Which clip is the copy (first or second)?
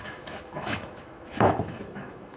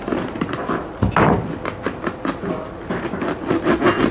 first